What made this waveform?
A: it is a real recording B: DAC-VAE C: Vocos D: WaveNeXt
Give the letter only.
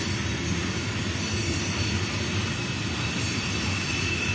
A